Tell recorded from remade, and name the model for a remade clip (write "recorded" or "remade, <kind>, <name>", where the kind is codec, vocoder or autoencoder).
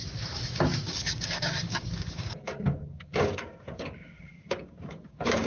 remade, codec, DAC